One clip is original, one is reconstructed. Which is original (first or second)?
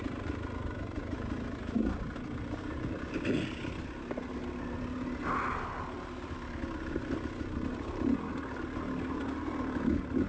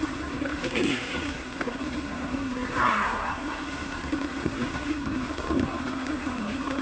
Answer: first